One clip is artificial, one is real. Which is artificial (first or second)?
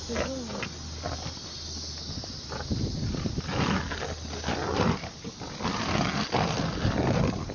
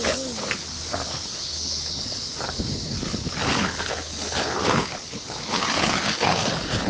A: second